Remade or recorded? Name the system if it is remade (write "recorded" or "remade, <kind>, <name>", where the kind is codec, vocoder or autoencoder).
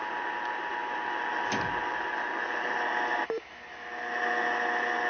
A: recorded